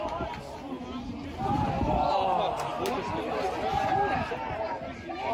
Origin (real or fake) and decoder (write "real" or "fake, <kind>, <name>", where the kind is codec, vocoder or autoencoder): real